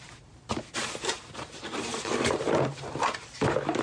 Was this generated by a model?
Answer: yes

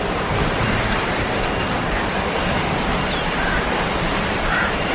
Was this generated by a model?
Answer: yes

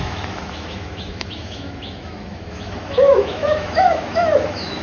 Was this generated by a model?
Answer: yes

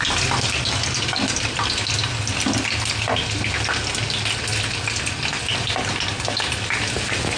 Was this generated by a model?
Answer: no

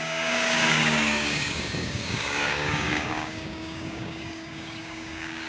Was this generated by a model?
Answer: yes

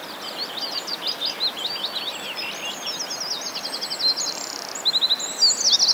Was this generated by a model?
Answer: no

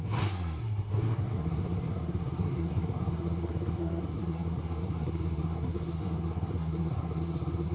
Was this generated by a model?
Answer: yes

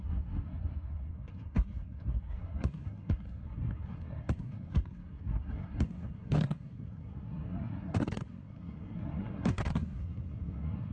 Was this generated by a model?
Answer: yes